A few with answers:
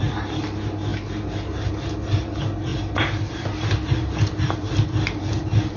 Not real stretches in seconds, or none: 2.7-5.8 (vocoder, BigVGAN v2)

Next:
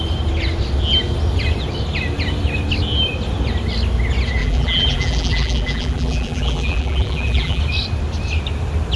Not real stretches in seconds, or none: 4.4-7.6 (vocoder, BigVGAN v2)

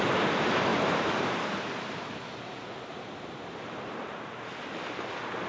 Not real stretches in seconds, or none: 0.7-3.1 (vocoder, BigVGAN v2)